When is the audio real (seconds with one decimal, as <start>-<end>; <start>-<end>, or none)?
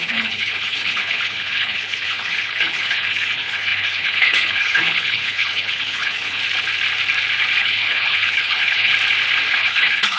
6.4-7.6; 8.9-9.5